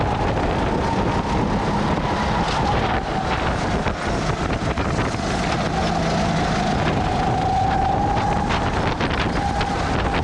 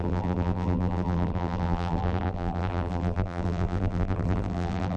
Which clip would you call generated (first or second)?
second